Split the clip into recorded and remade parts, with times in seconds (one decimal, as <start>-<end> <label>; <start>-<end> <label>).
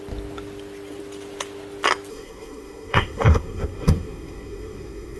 0.0-2.1 recorded; 2.1-5.2 remade